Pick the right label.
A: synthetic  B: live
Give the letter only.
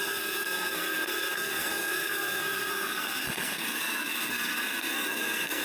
A